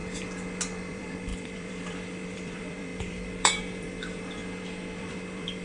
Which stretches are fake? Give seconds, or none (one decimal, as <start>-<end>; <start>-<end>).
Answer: 0.9-4.4; 5.0-5.6